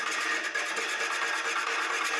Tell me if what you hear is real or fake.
real